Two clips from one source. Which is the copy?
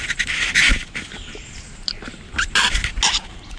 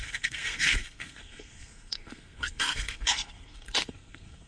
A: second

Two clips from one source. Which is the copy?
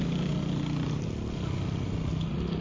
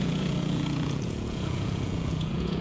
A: second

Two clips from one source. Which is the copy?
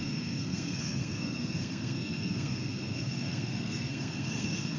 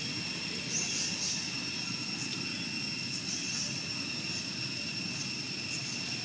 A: first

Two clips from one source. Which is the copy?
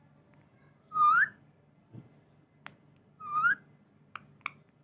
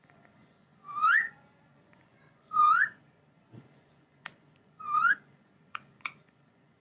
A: second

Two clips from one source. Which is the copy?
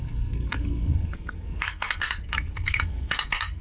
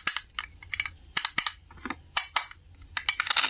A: first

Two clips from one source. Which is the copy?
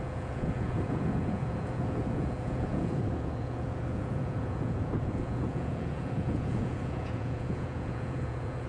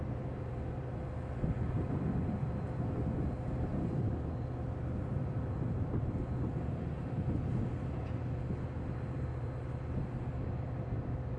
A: first